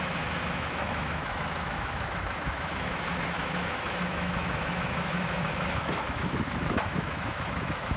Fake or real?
fake